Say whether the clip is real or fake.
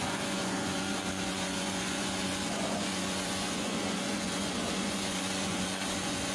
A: fake